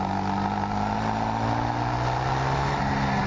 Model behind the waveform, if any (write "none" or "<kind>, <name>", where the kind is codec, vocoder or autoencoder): none